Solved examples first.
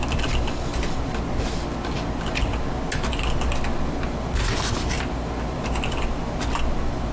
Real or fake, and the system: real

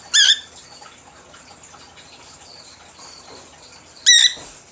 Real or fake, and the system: real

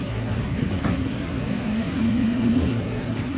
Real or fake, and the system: fake, codec, SNAC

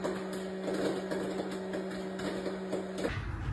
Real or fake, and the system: real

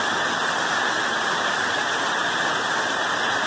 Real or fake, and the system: real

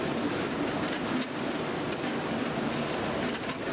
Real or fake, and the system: real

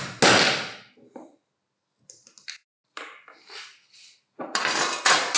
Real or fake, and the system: real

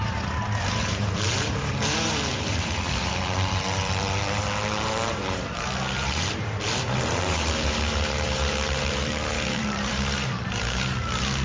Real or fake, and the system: fake, vocoder, BigVGAN v2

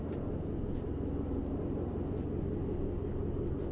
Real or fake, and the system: real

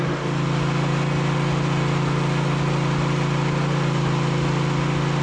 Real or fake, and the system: real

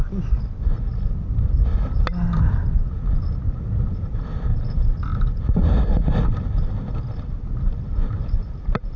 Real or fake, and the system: real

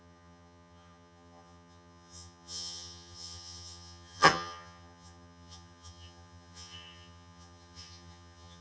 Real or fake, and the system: fake, vocoder, HiFi-GAN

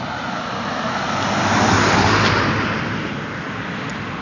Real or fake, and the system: real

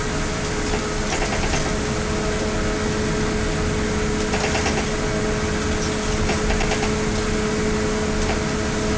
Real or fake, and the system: real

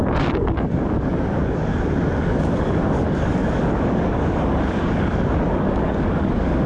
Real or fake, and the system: fake, codec, DAC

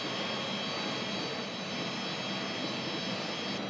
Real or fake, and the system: real